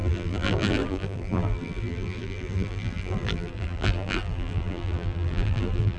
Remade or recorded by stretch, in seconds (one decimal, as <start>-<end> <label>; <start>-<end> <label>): 0.0-6.0 remade